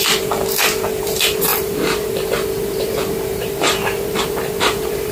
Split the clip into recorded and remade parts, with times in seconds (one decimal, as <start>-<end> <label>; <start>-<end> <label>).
0.0-5.1 remade